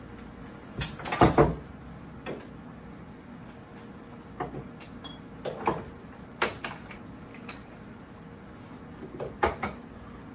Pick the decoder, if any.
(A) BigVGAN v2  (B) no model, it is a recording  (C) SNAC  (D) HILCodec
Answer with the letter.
B